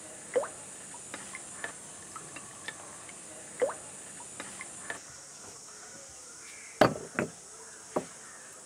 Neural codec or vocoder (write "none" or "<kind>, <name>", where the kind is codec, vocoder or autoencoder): none